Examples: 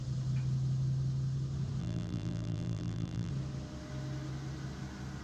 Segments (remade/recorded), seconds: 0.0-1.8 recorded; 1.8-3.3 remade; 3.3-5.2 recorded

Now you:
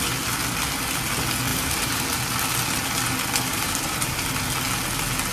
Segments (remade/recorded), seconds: 0.0-1.5 recorded; 1.5-2.0 remade; 2.0-3.5 recorded; 3.5-4.3 remade; 4.3-5.3 recorded

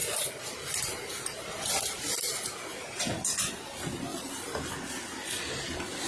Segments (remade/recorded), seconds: 0.0-0.7 remade; 0.7-4.1 recorded; 4.1-4.7 remade; 4.7-6.1 recorded

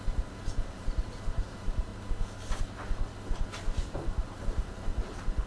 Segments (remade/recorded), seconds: 0.0-1.9 remade; 1.9-3.6 recorded; 3.6-5.5 remade

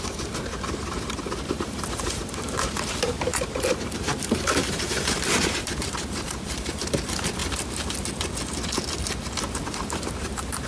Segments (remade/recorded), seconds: 0.0-7.4 remade; 7.4-9.6 recorded; 9.6-10.7 remade

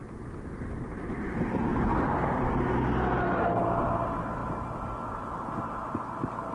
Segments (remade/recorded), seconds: 0.0-1.7 recorded; 1.7-2.6 remade; 2.6-6.5 recorded

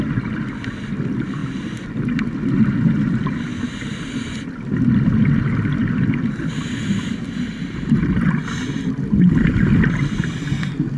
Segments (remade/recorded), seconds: 0.0-3.5 recorded; 3.5-4.1 remade; 4.1-11.0 recorded